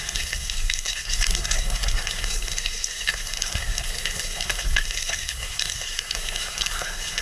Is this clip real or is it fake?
fake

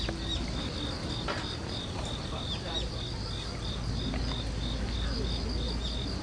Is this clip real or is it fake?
real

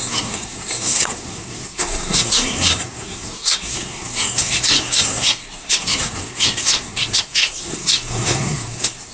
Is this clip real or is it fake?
fake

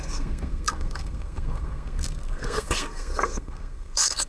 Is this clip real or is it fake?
fake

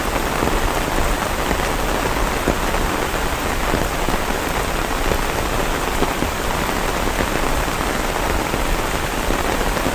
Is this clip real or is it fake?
real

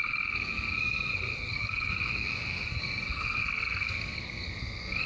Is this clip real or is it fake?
fake